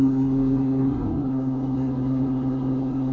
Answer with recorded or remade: remade